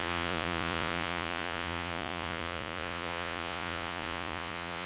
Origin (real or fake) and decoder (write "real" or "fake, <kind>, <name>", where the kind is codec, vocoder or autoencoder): fake, vocoder, Vocos